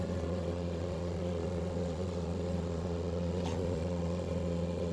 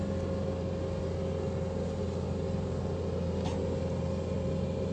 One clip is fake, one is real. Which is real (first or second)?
second